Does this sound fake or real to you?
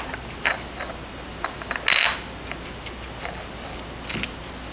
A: real